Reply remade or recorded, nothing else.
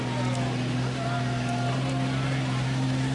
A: recorded